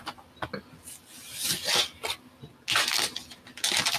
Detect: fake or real real